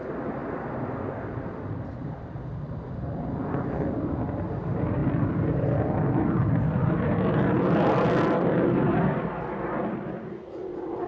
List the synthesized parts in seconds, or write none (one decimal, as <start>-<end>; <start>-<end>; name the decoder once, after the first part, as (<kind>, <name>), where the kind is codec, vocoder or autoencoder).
5.0-9.3 (vocoder, BigVGAN v2)